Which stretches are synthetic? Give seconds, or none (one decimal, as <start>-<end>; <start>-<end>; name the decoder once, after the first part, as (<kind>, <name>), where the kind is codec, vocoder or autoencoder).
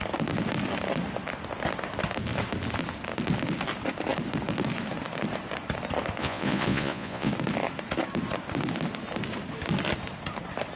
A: 6.2-7.3 (vocoder, Vocos)